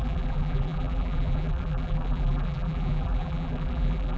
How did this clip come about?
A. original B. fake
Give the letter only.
B